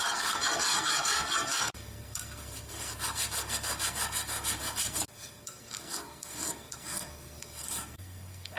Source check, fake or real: fake